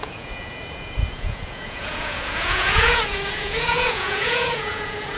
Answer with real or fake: fake